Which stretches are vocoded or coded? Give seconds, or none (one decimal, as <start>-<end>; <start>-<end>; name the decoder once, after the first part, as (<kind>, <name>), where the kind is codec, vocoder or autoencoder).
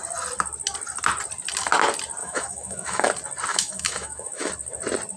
2.2-3.1 (autoencoder, DAC-VAE); 3.5-4.5